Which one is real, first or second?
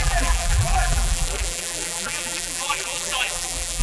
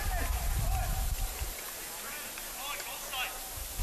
second